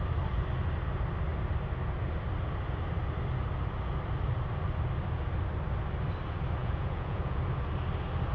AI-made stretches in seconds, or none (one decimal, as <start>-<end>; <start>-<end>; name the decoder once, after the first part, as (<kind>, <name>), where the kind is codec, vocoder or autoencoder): 6.6-7.4 (vocoder, Vocos)